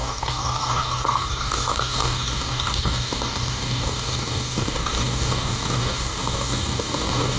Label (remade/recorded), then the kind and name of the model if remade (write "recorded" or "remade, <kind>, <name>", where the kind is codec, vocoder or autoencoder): remade, codec, DAC